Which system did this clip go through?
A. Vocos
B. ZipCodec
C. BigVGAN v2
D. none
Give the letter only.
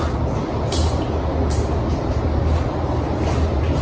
D